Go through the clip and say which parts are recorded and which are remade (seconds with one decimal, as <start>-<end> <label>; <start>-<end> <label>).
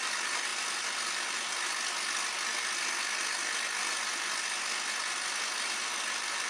0.0-6.5 recorded